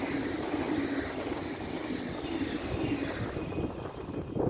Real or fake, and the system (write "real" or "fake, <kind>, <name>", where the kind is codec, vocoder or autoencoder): real